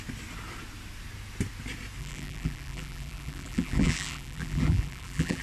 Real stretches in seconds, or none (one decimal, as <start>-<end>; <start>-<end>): 0.0-2.0